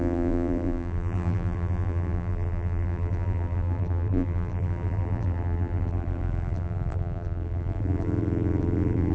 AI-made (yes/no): yes